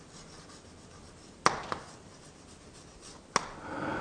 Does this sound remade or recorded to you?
recorded